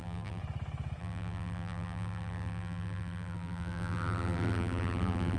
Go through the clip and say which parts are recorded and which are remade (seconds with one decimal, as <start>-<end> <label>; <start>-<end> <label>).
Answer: 0.0-0.4 remade; 0.4-1.0 recorded; 1.0-5.4 remade